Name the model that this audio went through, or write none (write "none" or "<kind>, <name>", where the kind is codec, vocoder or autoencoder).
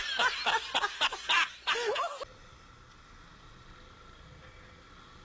none